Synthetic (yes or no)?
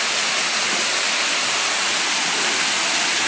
no